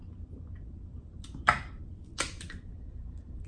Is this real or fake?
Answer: real